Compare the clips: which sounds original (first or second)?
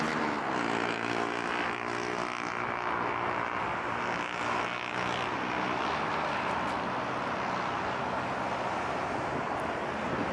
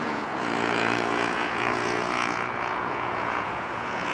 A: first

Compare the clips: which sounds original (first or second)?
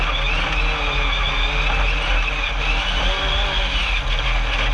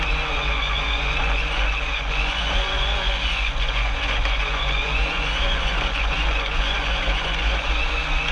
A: first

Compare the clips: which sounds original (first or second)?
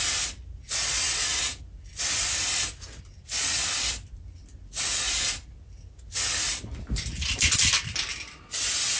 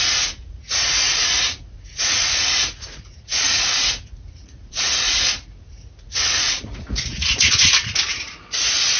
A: first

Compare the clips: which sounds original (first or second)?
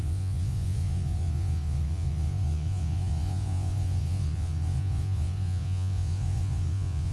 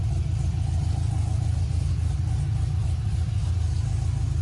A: second